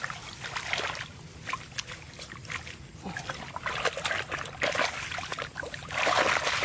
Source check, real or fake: real